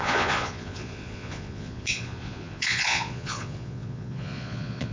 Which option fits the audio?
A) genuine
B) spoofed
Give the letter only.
B